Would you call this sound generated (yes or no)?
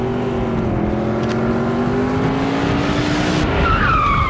no